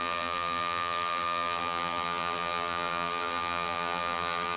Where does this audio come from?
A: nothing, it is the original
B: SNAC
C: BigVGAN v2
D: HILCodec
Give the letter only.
C